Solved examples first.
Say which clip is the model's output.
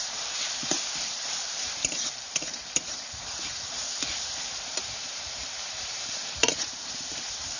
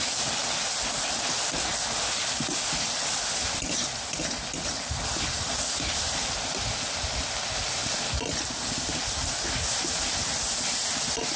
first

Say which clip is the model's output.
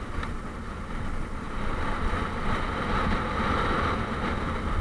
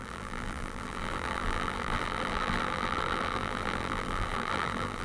second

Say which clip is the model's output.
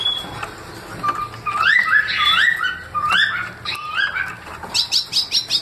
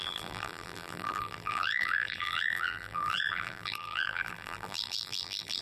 second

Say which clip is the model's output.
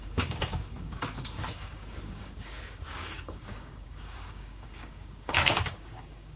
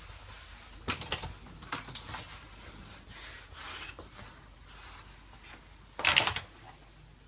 first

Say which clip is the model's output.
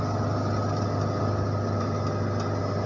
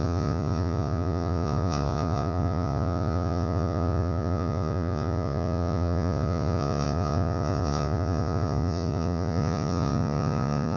second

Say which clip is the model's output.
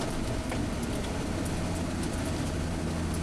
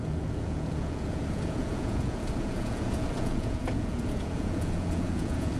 second